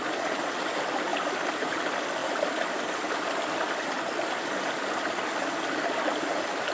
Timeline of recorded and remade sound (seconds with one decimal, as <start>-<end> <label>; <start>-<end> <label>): 0.0-6.7 recorded